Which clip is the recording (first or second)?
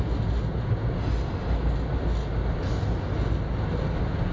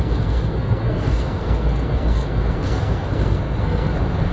first